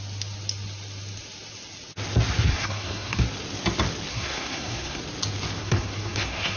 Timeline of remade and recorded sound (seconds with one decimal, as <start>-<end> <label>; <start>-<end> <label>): 0.0-2.5 recorded; 2.5-3.2 remade; 3.2-4.1 recorded; 4.1-5.0 remade; 5.0-5.6 recorded; 5.6-6.6 remade